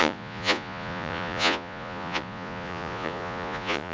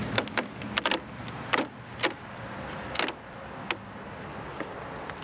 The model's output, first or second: first